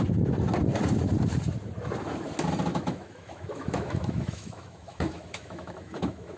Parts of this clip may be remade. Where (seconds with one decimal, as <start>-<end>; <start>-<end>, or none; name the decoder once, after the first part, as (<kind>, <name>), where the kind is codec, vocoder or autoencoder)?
2.7-6.4 (autoencoder, DAC-VAE)